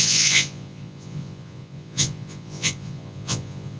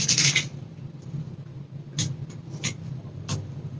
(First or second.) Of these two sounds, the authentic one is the second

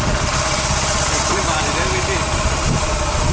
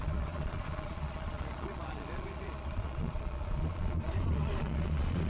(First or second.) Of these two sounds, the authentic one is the first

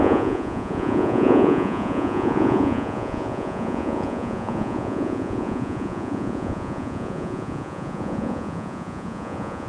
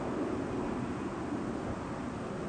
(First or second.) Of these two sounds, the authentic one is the second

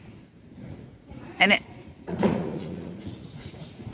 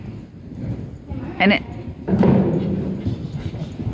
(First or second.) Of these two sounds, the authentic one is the second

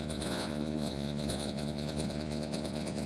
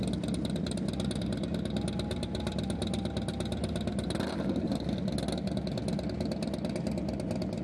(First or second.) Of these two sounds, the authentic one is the second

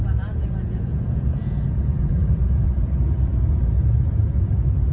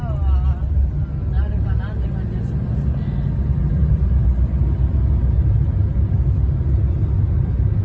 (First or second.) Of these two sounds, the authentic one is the second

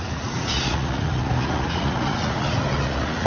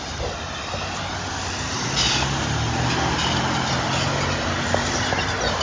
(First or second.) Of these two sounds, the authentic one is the second